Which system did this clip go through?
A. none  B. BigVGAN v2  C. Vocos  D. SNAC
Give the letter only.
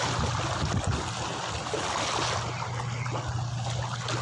A